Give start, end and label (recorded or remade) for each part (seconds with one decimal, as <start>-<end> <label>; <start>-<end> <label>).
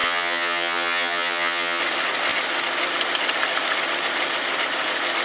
0.0-1.8 remade; 1.8-5.2 recorded